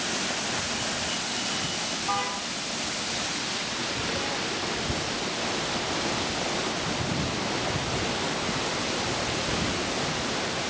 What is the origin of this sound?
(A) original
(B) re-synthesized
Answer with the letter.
A